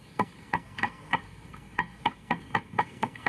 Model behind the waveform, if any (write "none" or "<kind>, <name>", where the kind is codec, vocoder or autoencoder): codec, SNAC